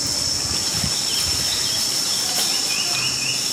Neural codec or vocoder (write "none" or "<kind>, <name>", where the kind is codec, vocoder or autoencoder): none